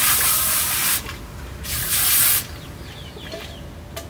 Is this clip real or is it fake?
real